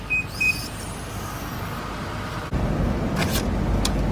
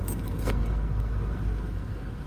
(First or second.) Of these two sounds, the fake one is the second